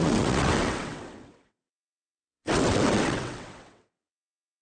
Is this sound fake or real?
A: fake